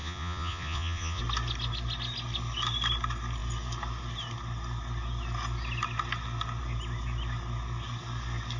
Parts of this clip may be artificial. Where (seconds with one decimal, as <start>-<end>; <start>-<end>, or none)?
0.0-1.2

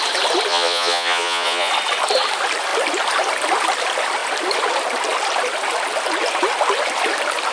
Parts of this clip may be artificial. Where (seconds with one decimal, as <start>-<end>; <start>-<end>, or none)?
0.5-1.7

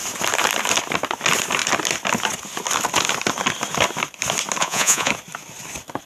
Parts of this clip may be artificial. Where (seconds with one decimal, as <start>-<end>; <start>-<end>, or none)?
4.6-5.1

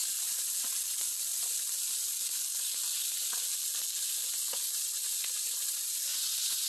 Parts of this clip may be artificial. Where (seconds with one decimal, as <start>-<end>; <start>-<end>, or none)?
6.1-6.7

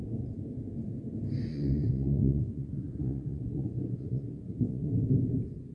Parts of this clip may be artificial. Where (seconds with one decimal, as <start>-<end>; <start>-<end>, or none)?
1.5-4.9

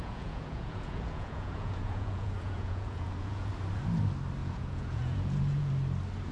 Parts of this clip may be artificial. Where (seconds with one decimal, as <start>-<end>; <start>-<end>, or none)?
0.0-3.5; 4.4-5.7